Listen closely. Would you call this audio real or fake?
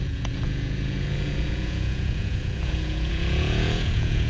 fake